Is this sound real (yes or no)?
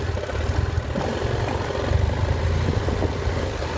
yes